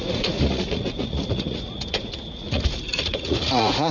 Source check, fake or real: fake